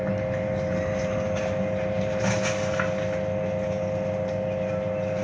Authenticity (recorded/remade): recorded